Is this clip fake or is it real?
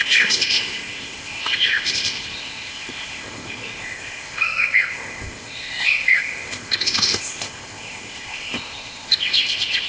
fake